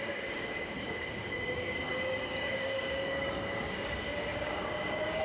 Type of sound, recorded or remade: remade